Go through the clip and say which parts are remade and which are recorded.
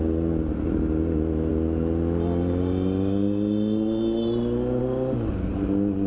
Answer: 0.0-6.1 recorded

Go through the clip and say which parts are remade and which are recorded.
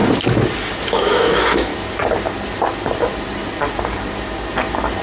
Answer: 0.0-0.9 recorded; 0.9-1.7 remade; 1.7-5.0 recorded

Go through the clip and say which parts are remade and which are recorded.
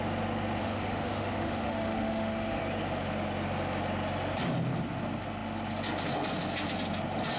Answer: 0.0-0.6 recorded; 0.6-2.6 remade; 2.6-7.4 recorded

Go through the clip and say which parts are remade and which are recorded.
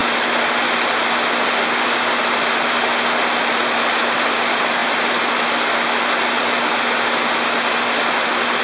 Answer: 0.0-8.6 recorded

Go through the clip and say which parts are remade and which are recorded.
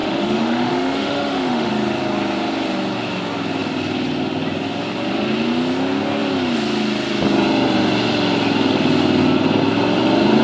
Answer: 0.0-1.7 remade; 1.7-10.4 recorded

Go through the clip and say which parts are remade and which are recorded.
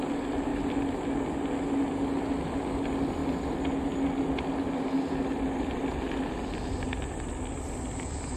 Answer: 0.0-8.4 recorded